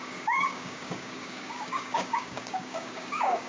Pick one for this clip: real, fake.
fake